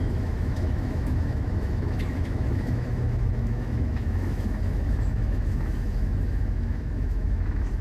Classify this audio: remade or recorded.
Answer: remade